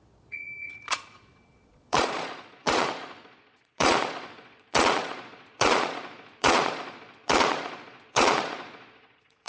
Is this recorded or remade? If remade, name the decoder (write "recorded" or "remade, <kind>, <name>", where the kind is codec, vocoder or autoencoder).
remade, vocoder, Vocos